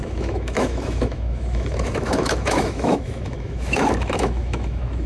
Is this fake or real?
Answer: fake